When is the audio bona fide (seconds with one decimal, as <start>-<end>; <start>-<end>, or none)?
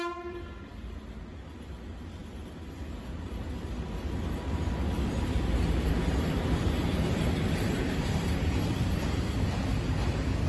0.0-10.5